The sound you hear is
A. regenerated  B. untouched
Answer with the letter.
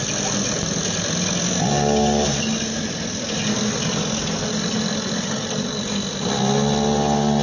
B